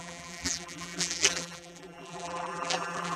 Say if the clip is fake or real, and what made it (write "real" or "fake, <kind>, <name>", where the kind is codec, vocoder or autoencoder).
fake, vocoder, BigVGAN v2